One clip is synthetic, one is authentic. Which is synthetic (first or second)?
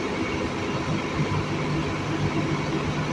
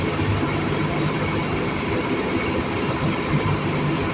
second